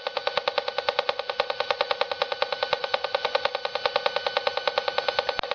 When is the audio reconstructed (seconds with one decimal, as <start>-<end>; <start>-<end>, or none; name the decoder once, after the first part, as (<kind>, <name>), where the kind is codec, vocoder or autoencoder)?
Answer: 2.8-3.5 (vocoder, Vocos)